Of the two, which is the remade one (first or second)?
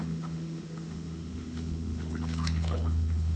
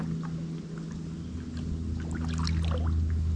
first